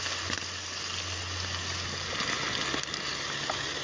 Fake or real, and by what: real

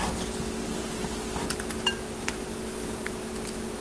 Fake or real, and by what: real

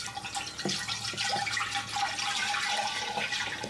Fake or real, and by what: real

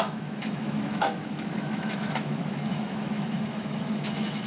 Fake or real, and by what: fake, autoencoder, DAC-VAE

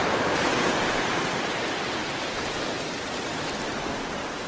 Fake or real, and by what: real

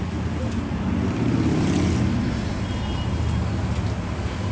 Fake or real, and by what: real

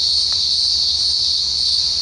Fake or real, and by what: real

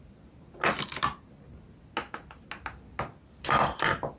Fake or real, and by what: real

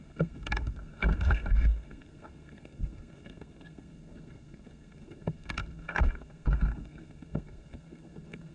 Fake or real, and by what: fake, codec, SNAC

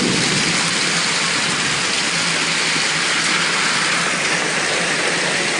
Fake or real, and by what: real